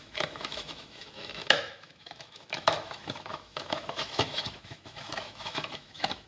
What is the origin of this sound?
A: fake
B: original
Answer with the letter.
A